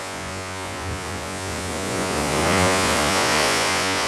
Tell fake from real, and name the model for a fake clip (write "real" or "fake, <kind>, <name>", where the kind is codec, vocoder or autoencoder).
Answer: fake, vocoder, Vocos